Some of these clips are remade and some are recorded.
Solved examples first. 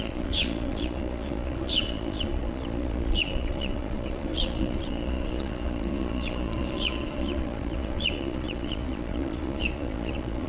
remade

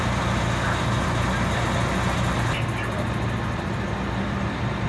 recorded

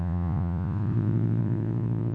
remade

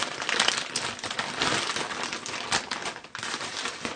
recorded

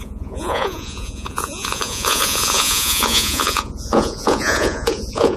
remade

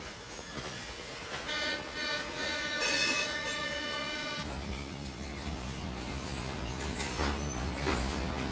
remade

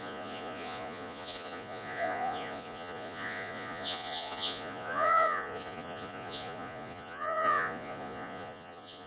remade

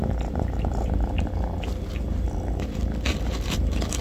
recorded